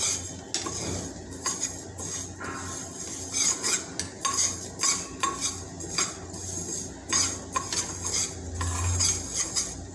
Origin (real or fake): real